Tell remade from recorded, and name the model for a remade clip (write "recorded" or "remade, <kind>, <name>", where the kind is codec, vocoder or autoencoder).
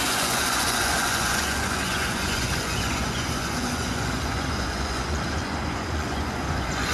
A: remade, vocoder, Vocos